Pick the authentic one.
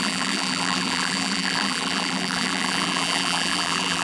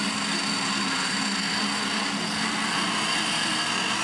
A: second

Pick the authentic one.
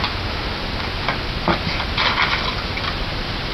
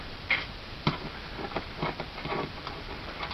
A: first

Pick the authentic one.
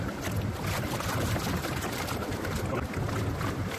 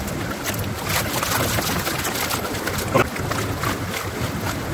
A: second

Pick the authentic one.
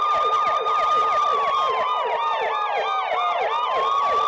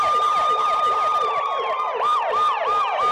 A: first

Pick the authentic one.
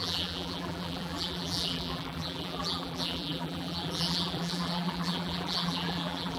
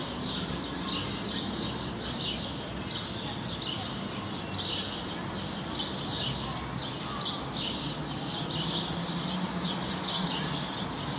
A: second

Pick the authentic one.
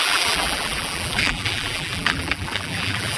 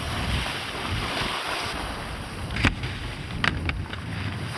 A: second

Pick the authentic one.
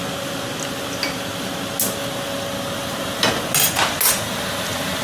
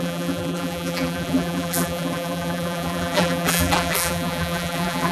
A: first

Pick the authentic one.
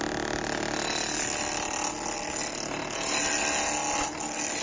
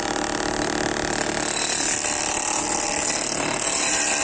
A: first